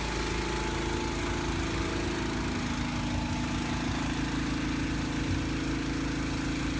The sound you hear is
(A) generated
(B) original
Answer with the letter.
B